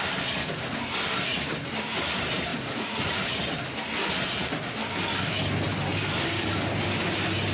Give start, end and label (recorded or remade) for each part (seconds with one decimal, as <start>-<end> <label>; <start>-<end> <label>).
0.0-2.5 recorded; 2.5-3.2 remade; 3.2-7.5 recorded